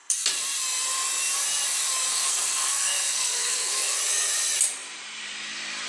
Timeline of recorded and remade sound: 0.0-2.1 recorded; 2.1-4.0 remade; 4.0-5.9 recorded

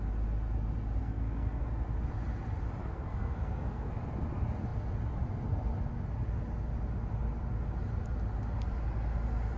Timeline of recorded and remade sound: 0.0-1.0 recorded; 1.0-1.6 remade; 1.6-2.8 recorded; 2.8-3.9 remade; 3.9-9.6 recorded